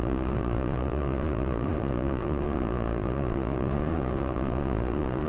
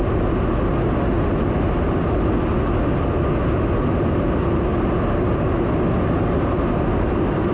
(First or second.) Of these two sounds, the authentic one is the second